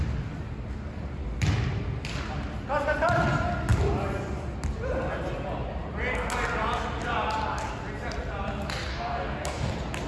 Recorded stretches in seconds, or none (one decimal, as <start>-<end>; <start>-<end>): 0.0-8.9; 9.7-10.1